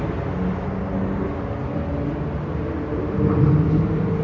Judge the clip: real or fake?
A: real